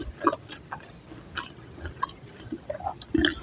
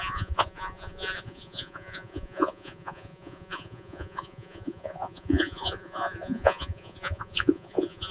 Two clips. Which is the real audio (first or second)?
first